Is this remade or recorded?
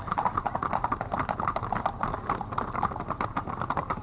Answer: recorded